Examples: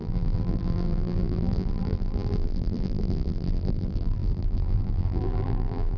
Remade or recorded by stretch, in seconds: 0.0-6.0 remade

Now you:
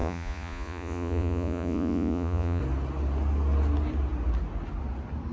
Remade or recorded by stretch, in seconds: 0.0-2.6 remade; 2.6-5.3 recorded

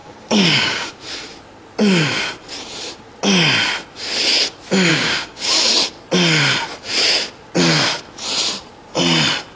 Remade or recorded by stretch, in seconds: 0.0-0.9 remade; 0.9-4.9 recorded; 4.9-5.7 remade; 5.7-9.6 recorded